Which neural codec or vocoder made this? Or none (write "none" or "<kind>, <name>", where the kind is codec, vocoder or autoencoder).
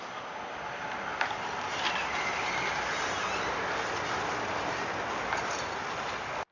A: none